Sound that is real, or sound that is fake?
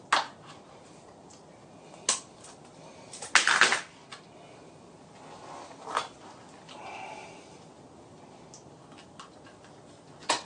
real